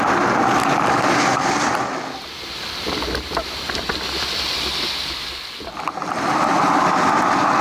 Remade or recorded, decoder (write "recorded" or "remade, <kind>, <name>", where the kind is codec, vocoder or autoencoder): recorded